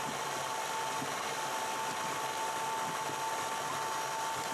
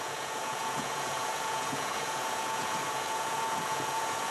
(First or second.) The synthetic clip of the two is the second